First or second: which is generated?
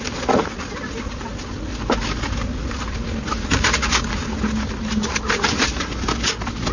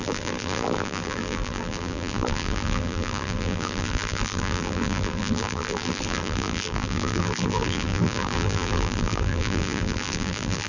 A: second